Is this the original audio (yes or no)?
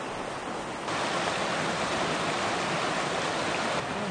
yes